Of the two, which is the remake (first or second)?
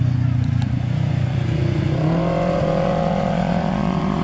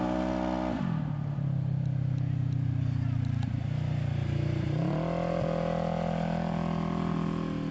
first